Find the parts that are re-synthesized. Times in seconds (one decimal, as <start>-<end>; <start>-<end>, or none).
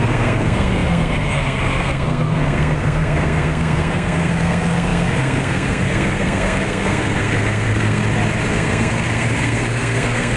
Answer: 0.0-8.0; 8.5-10.4